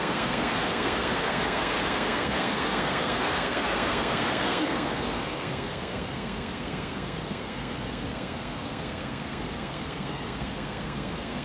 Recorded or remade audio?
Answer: remade